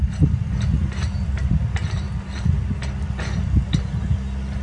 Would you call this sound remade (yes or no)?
no